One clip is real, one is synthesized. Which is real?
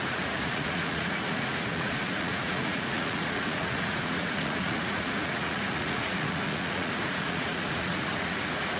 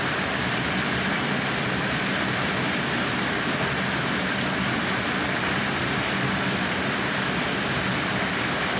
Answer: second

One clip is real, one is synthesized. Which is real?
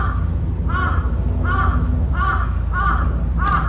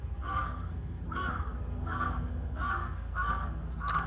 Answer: first